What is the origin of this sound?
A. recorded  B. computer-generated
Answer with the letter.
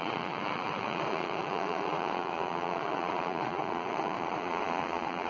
B